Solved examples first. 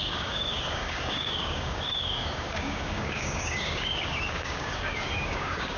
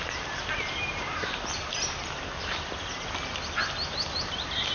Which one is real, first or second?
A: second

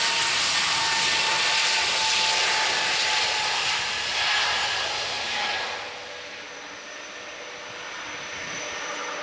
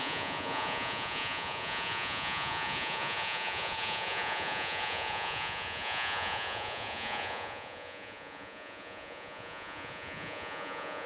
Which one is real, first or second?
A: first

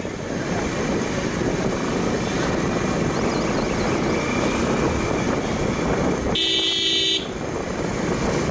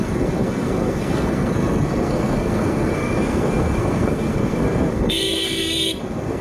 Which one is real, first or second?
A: first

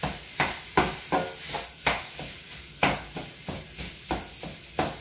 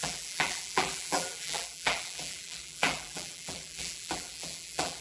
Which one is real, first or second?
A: first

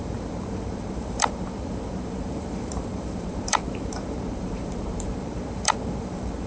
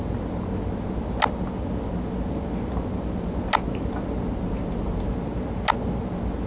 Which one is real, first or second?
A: second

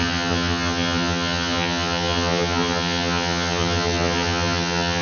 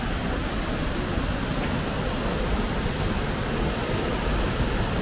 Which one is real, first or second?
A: second